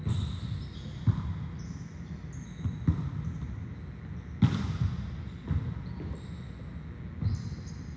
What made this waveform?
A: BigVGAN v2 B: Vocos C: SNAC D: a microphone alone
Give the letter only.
D